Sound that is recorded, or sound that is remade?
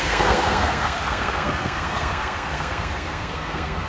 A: remade